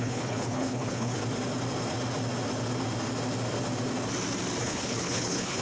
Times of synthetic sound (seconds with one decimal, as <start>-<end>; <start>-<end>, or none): 0.0-1.2; 4.6-5.6